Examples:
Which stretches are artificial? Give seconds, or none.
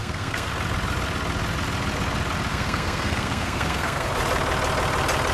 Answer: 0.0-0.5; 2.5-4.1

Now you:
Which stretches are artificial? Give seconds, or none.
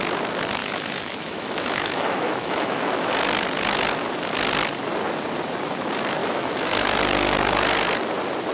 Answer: 0.6-3.1; 6.2-7.0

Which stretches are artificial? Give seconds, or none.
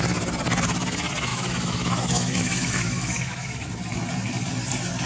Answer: 1.3-3.7